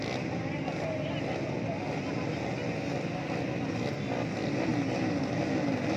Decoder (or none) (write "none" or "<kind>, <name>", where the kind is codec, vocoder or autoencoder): none